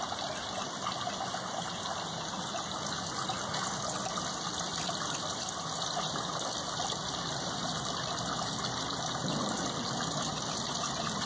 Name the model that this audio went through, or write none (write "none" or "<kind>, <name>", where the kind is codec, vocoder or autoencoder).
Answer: none